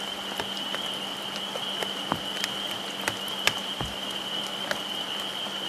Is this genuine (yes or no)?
yes